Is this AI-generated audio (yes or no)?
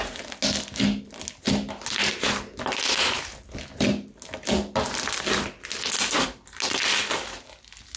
no